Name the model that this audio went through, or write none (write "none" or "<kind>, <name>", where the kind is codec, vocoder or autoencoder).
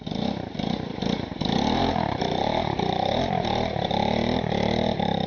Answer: vocoder, BigVGAN v2